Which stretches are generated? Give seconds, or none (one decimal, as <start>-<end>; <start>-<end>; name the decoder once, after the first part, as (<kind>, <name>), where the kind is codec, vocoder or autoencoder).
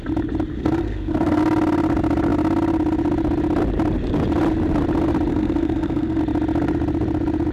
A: 0.5-1.4 (codec, SNAC); 5.3-6.2